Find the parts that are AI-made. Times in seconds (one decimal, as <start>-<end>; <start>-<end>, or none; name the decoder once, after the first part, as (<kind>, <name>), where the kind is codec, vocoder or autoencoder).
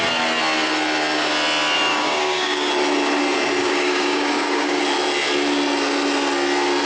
1.9-2.7 (codec, DAC); 3.6-4.8